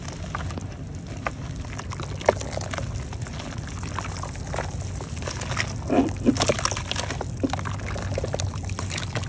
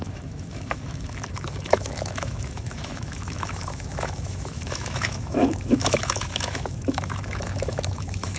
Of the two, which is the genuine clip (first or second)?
first